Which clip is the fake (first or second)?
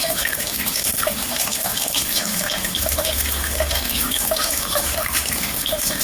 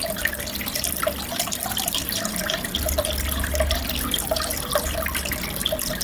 first